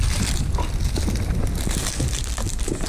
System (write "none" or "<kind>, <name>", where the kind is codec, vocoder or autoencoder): none